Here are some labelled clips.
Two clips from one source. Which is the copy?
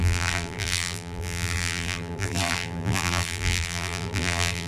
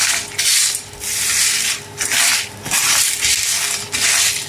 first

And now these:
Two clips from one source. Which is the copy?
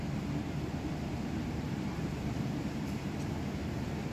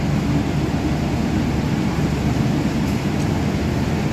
first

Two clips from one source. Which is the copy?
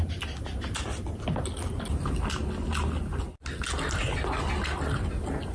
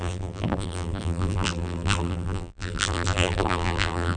second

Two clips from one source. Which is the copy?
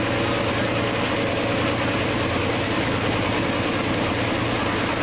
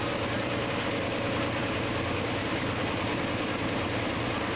second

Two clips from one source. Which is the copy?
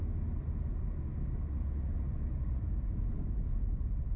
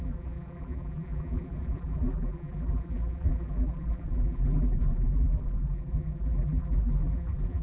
second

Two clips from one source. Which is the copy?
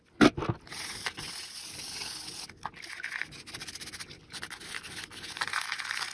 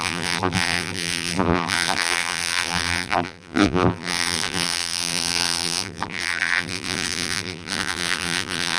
second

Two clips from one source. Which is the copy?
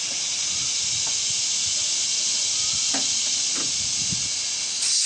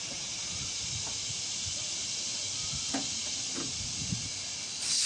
second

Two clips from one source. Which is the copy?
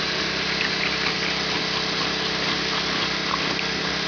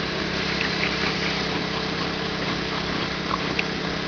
second